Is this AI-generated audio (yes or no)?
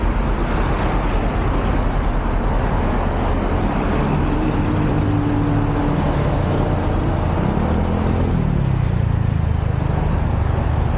no